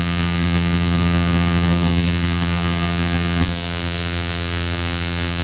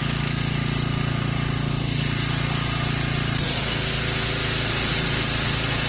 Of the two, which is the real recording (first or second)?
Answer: second